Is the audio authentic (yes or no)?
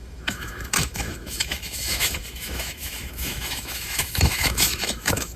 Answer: no